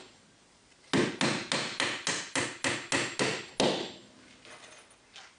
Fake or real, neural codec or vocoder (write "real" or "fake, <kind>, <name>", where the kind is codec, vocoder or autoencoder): real